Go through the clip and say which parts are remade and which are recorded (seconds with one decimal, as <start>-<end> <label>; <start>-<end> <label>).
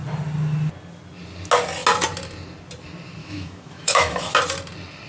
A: 0.0-3.2 recorded; 3.2-4.3 remade; 4.3-5.1 recorded